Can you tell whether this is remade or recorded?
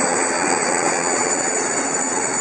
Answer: remade